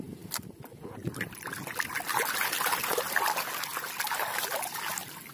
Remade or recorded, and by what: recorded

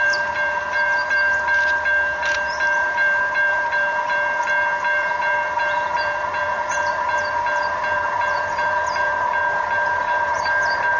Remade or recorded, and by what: remade, vocoder, BigVGAN v2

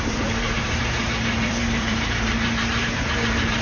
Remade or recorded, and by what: remade, vocoder, BigVGAN v2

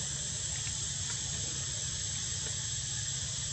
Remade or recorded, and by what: recorded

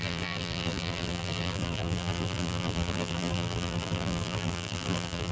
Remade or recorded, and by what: remade, vocoder, BigVGAN v2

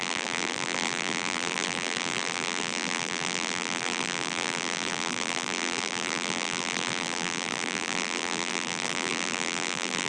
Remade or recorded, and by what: remade, vocoder, BigVGAN v2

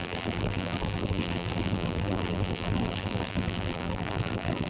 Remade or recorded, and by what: remade, vocoder, BigVGAN v2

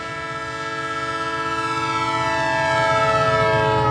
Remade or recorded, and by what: recorded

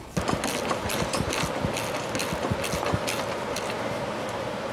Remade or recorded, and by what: recorded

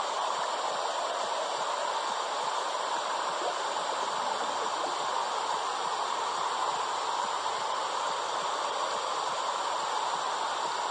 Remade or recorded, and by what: recorded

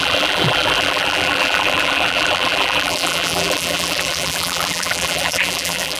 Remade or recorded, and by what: remade, vocoder, BigVGAN v2